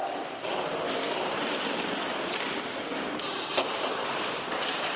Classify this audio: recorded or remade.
recorded